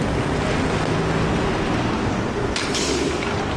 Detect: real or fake real